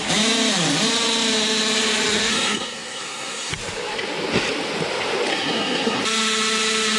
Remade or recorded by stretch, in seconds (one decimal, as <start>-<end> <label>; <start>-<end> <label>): 0.0-2.3 recorded; 2.3-3.5 remade; 3.5-5.3 recorded; 5.3-6.0 remade; 6.0-7.0 recorded